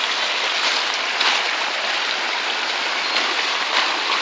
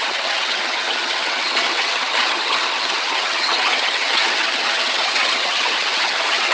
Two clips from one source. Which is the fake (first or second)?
second